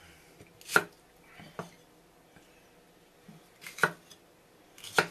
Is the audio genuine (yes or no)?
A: yes